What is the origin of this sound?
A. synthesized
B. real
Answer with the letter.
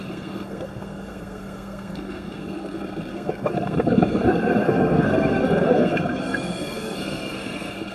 A